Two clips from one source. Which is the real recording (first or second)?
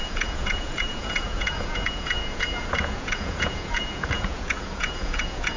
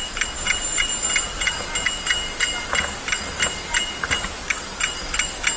second